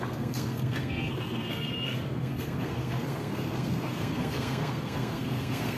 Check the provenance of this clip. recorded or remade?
remade